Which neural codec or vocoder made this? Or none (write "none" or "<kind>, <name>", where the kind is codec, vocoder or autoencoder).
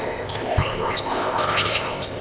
codec, ZipCodec